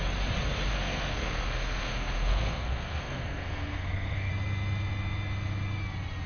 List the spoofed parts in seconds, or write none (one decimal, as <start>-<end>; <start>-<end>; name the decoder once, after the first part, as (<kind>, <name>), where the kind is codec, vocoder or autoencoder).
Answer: 0.7-4.3 (codec, SNAC)